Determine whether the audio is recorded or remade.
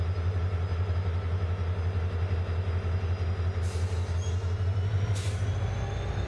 recorded